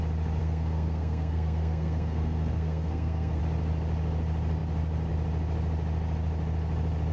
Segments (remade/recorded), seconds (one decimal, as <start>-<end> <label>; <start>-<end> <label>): 0.0-0.4 recorded; 0.4-3.4 remade; 3.4-7.1 recorded